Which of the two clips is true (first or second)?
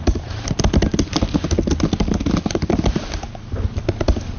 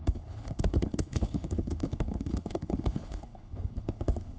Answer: first